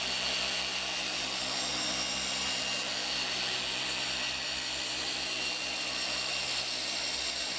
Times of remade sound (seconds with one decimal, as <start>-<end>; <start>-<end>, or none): 1.7-2.6; 4.0-7.6